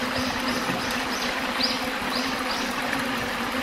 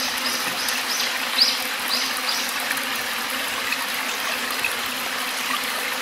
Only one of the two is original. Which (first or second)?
second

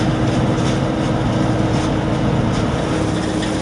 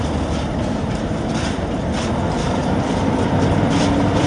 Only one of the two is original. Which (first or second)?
first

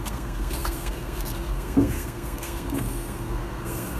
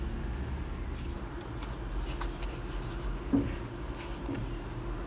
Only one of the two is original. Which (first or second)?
second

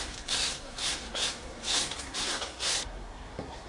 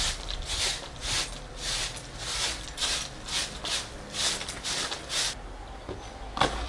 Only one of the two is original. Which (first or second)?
second